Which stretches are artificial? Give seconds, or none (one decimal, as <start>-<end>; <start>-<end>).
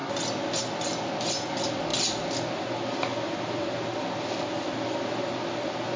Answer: none